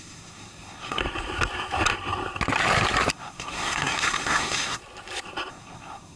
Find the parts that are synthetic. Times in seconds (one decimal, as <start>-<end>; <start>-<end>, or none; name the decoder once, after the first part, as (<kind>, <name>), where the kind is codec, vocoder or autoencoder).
0.0-1.0 (codec, SNAC); 3.1-4.8; 5.5-6.2